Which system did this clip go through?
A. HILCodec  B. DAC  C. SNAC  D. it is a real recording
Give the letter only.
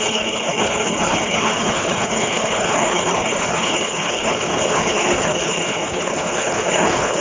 A